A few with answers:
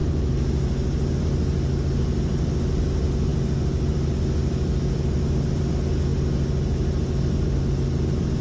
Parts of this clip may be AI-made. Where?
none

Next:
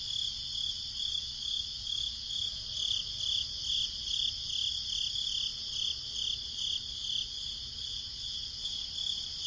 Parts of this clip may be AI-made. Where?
1.1-2.1 (autoencoder, DAC-VAE)

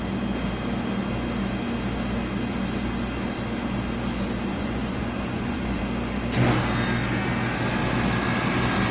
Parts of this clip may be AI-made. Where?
4.5-5.8 (vocoder, Vocos)

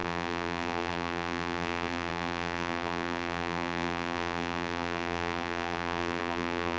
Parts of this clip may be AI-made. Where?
0.0-6.8 (vocoder, BigVGAN v2)

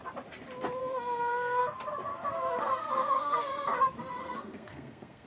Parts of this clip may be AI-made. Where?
0.8-1.6 (codec, SNAC); 2.6-3.5; 4.2-5.3

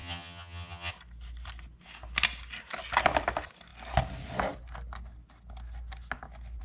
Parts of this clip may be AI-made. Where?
0.0-0.9 (vocoder, HiFi-GAN)